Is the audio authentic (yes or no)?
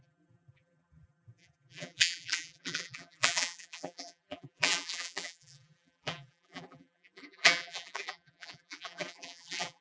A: no